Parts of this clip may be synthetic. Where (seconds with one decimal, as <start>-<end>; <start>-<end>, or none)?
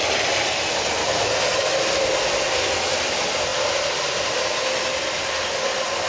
none